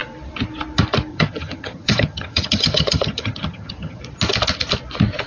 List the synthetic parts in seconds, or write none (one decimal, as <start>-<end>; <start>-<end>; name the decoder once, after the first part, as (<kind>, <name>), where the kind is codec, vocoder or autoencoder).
1.1-4.0 (vocoder, HiFi-GAN)